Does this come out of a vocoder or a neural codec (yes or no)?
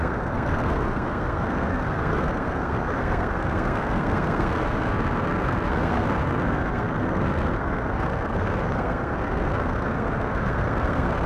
yes